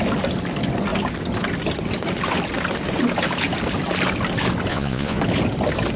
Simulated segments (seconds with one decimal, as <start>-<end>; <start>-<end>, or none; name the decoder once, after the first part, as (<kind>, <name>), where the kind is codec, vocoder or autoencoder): 4.7-5.2 (vocoder, Vocos)